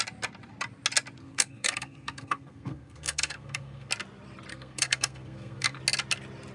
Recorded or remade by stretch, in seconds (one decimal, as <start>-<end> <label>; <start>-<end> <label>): 0.0-1.2 recorded; 1.2-3.9 remade; 3.9-4.5 recorded; 4.5-5.8 remade; 5.8-6.5 recorded